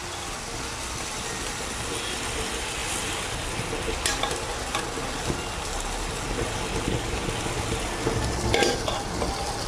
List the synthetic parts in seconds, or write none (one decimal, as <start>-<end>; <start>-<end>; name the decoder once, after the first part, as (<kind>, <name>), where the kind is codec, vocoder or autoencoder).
none